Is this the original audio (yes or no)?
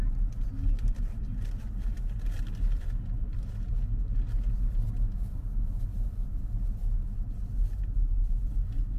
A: yes